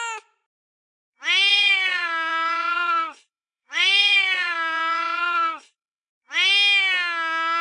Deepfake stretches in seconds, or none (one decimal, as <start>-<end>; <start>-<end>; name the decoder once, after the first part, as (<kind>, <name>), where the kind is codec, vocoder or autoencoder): 1.5-6.1 (vocoder, Vocos)